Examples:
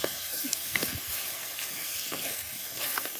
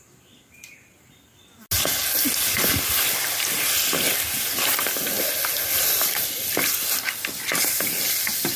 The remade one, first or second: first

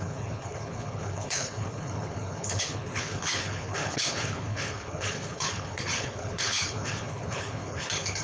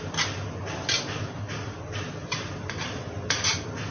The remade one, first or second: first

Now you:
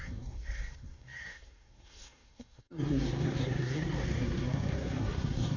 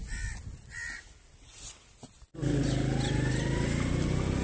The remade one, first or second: first